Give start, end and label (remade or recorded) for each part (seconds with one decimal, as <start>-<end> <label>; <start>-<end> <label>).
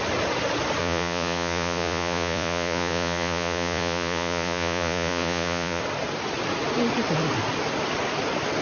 0.0-0.8 recorded; 0.8-5.8 remade; 5.8-8.6 recorded